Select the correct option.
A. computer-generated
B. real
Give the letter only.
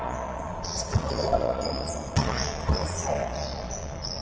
A